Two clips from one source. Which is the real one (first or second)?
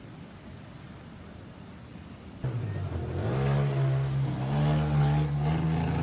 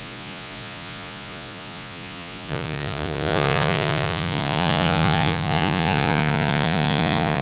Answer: first